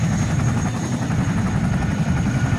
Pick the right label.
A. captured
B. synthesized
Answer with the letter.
A